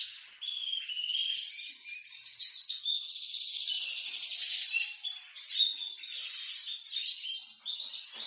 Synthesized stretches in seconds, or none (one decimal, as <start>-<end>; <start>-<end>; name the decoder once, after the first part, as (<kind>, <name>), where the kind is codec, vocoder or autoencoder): 1.2-2.0 (vocoder, BigVGAN v2)